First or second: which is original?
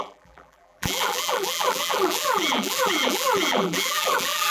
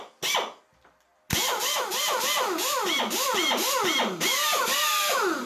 second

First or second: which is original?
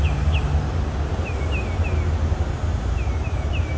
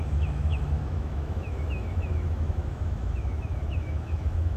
first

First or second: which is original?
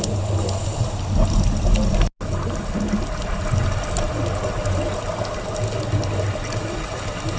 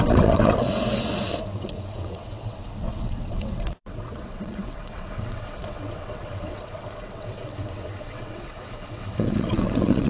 first